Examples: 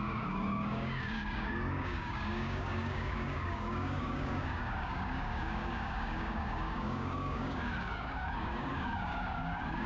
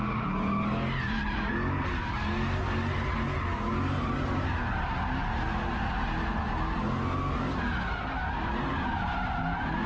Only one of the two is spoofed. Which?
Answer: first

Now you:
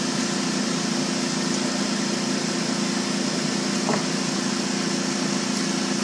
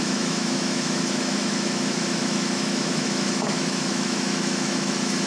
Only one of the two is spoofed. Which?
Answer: second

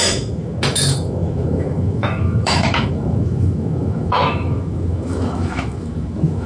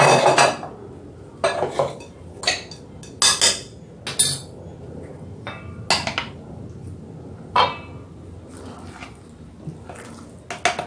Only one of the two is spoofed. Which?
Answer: first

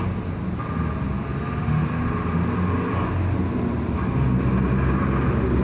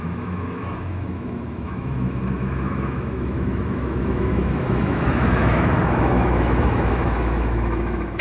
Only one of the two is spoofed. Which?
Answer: second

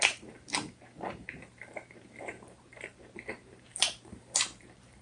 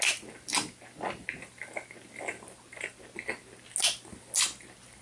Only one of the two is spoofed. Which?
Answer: first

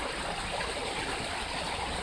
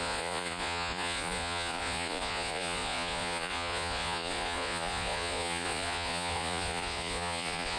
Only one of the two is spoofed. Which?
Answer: second